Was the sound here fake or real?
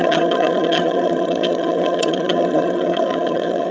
fake